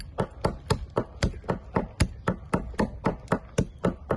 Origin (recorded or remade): recorded